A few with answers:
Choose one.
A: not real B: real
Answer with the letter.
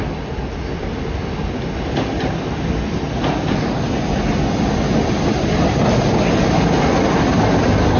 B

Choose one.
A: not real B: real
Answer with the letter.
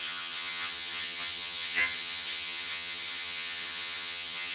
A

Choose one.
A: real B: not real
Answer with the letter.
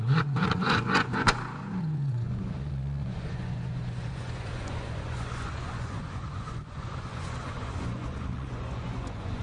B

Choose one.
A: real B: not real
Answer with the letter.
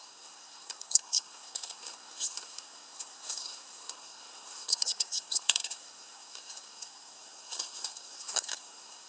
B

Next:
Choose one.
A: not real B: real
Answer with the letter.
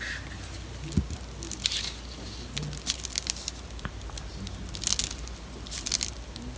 B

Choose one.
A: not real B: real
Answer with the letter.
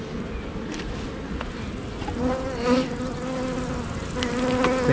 B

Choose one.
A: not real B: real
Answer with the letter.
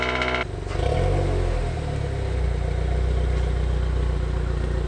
B